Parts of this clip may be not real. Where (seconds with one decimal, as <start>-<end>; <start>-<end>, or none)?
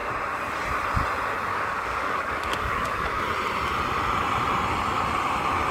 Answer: 1.5-3.2